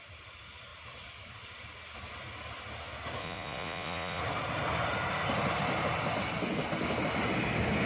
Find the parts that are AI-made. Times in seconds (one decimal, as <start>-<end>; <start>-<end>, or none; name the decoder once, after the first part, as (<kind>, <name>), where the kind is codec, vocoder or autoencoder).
3.2-4.2 (vocoder, Vocos)